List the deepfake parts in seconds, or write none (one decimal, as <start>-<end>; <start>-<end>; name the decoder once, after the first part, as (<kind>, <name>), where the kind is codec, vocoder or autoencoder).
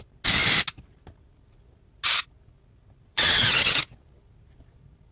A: 3.1-3.8 (vocoder, WaveNeXt)